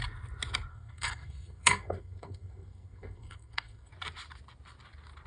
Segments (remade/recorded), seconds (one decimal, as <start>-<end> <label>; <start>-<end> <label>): 0.0-0.7 recorded; 0.7-3.9 remade; 3.9-5.3 recorded